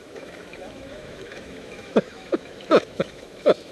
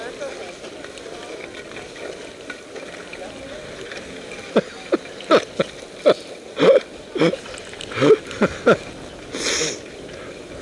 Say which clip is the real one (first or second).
second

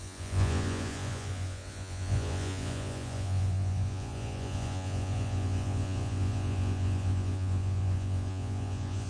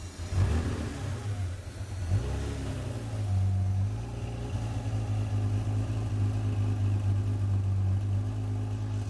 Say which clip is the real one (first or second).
second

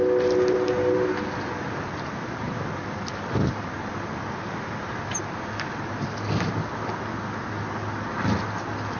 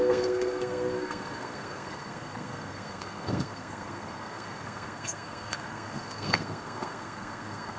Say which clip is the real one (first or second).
first